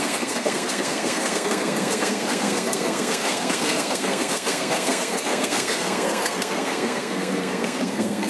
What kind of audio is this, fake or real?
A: fake